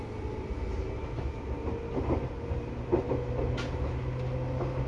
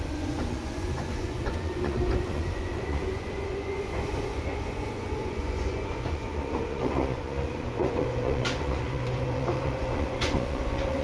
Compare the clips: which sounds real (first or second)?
first